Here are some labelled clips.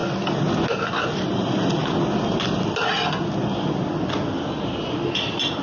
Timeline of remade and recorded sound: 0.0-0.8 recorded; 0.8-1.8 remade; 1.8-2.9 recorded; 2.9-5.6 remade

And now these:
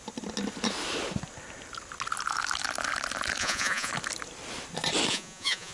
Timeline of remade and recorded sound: 0.0-3.4 recorded; 3.4-3.9 remade; 3.9-5.1 recorded; 5.1-5.7 remade

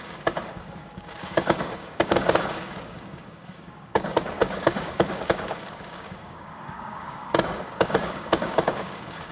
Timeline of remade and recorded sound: 0.0-9.3 remade

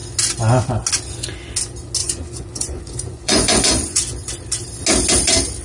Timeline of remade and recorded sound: 0.0-2.0 recorded; 2.0-4.3 remade; 4.3-5.6 recorded